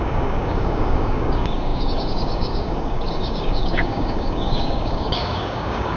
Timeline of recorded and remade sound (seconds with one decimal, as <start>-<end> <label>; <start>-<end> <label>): 0.0-6.0 remade